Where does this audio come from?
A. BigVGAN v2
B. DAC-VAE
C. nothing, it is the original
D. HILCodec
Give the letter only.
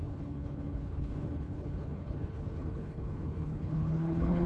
D